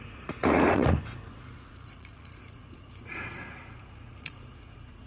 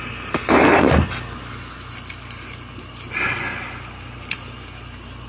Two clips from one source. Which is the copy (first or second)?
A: first